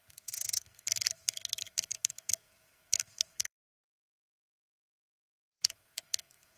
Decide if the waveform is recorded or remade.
remade